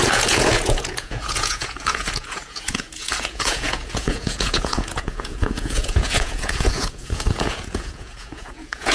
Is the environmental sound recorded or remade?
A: remade